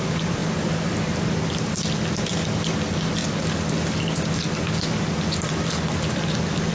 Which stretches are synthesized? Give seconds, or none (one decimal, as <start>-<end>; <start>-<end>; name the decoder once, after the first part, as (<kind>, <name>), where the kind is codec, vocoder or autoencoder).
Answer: 0.0-0.4 (vocoder, BigVGAN v2); 1.5-3.2; 5.5-6.7